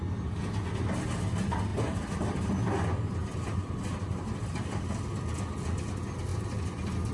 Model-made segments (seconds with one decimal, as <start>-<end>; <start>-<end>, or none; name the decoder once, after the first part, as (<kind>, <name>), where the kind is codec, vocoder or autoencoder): 1.7-2.4 (vocoder, BigVGAN v2); 3.2-4.8